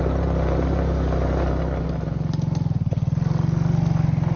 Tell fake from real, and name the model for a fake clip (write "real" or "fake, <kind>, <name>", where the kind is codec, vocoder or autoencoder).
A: real